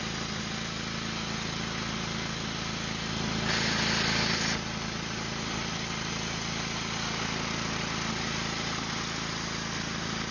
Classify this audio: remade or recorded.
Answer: recorded